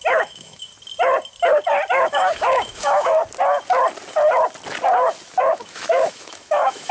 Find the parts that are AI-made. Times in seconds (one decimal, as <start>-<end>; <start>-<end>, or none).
0.0-0.7; 1.9-3.2; 5.4-6.9